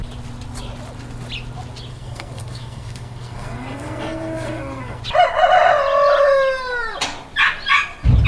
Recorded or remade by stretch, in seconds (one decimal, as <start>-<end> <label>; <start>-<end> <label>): 0.0-1.9 recorded; 1.9-5.0 remade; 5.0-8.3 recorded